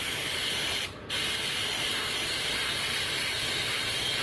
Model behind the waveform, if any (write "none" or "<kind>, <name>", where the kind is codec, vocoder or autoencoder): none